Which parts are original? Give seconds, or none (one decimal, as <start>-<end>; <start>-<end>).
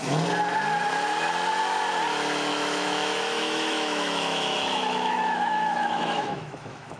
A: 0.0-2.5